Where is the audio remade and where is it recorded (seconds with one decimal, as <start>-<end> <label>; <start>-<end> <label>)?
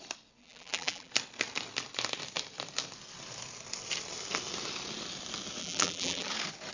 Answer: 0.0-0.4 recorded; 0.4-1.1 remade; 1.1-5.6 recorded; 5.6-6.3 remade; 6.3-6.7 recorded